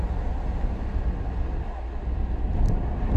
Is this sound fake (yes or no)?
no